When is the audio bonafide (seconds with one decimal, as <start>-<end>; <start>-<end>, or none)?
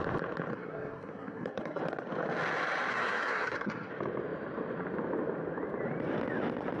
0.0-0.5; 1.8-2.9; 3.9-6.8